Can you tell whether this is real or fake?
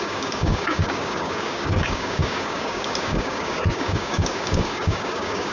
fake